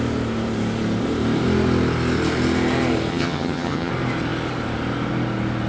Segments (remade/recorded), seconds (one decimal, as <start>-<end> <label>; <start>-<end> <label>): 0.0-3.1 recorded; 3.1-3.9 remade; 3.9-5.7 recorded

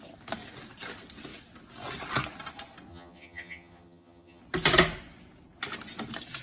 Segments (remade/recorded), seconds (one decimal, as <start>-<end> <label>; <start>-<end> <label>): 0.0-2.9 recorded; 2.9-4.4 remade; 4.4-6.4 recorded

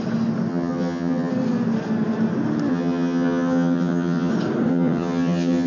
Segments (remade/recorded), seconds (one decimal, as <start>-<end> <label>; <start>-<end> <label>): 0.0-0.5 recorded; 0.5-1.3 remade; 1.3-2.7 recorded; 2.7-4.3 remade; 4.3-4.7 recorded; 4.7-5.7 remade

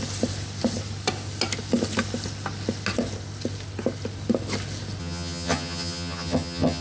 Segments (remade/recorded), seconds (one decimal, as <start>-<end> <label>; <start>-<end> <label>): 0.0-5.0 recorded; 5.0-6.8 remade

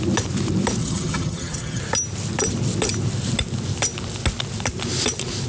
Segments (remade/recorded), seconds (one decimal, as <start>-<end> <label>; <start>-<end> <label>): 0.0-0.8 recorded; 0.8-1.8 remade; 1.8-5.5 recorded

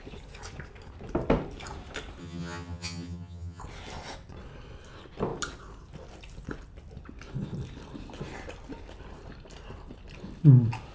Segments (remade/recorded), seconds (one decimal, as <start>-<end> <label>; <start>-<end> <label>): 0.0-2.2 recorded; 2.2-3.6 remade; 3.6-10.9 recorded

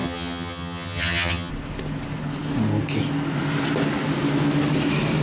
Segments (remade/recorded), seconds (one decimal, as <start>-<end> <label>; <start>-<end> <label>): 0.0-1.5 remade; 1.5-5.2 recorded

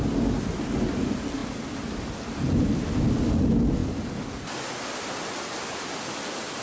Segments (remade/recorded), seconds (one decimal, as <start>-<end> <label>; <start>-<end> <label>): 0.0-6.6 recorded